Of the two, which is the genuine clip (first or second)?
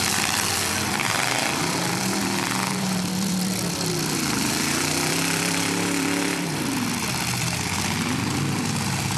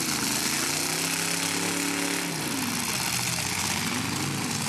second